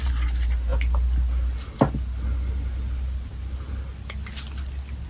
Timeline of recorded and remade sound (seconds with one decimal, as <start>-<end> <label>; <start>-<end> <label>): 0.0-5.1 recorded